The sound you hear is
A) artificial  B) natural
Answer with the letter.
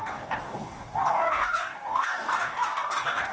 A